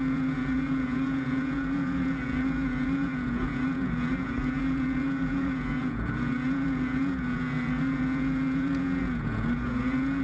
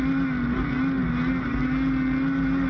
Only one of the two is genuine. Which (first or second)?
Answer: second